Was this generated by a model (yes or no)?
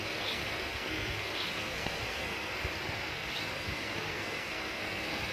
yes